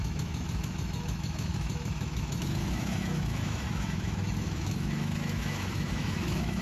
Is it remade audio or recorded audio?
remade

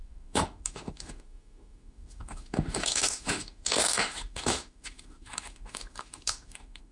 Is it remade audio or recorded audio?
remade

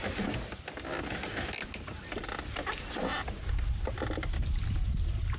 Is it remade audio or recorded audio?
recorded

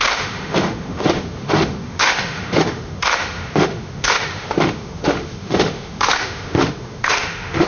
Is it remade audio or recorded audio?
remade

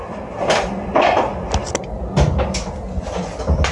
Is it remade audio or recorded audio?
recorded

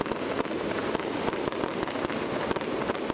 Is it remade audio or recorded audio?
recorded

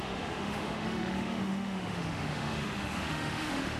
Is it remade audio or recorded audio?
remade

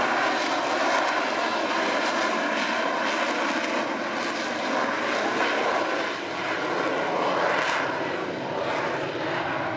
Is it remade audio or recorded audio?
recorded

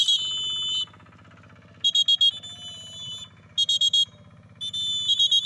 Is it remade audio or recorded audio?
recorded